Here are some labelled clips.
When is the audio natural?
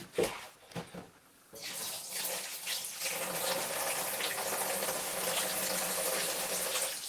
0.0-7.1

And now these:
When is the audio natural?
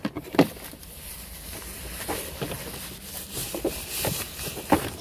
0.0-1.1; 2.1-5.0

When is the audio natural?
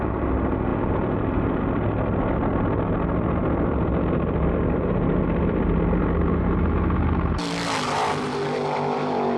0.0-0.7; 1.6-3.4; 6.3-9.4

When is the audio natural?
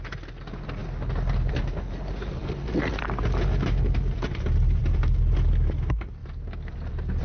0.0-6.2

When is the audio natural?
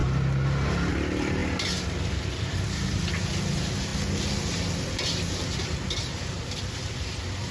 0.0-0.9; 1.4-2.1; 3.9-5.9